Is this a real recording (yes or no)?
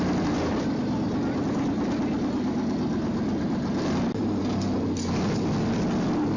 no